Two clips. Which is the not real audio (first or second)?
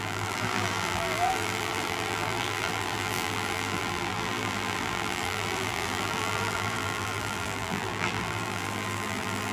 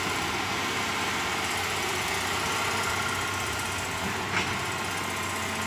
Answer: first